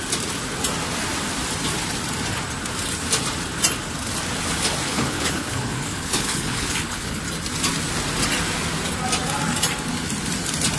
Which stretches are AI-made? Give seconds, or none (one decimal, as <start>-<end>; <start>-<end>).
4.9-7.2